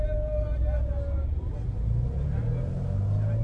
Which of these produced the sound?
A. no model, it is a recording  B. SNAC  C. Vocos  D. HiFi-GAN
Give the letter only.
A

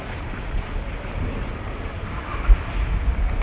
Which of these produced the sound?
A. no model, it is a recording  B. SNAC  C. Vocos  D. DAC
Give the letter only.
A